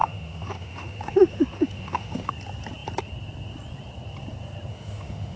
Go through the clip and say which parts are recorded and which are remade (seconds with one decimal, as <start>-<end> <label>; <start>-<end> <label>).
0.0-2.3 remade; 2.3-4.7 recorded; 4.7-5.4 remade